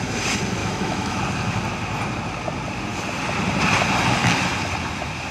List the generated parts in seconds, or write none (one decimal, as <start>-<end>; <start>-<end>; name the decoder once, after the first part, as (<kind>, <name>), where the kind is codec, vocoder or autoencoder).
0.6-1.2 (autoencoder, DAC-VAE)